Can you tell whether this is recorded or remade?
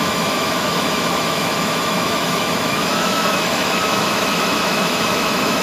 remade